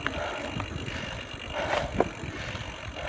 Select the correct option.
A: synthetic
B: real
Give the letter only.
B